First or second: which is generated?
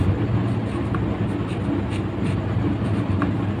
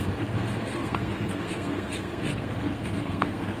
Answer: second